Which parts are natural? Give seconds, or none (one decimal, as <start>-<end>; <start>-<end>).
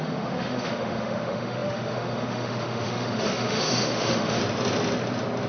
4.4-5.5